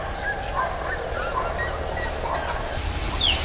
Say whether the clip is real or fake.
real